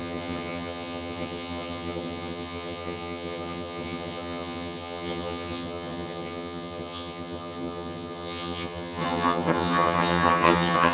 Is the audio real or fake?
fake